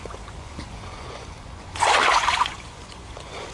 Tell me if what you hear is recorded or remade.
remade